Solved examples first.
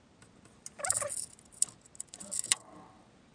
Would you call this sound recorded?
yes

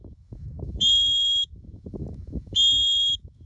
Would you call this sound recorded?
no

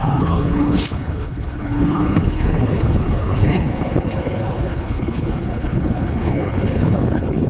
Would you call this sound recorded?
no